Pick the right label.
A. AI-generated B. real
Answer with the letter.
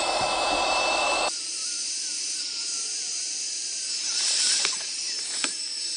A